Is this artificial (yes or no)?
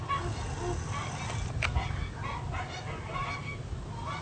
no